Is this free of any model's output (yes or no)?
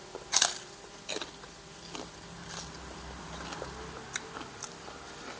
yes